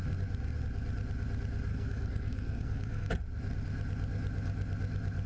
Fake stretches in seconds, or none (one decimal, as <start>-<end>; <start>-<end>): 1.7-3.1